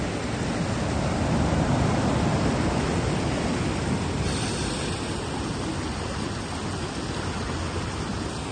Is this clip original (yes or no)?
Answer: yes